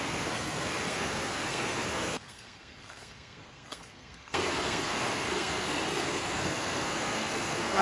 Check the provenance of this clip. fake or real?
fake